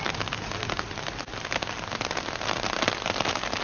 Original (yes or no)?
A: yes